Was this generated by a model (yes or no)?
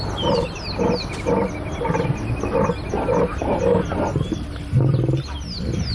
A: no